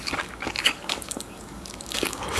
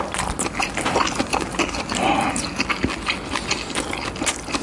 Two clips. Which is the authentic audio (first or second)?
second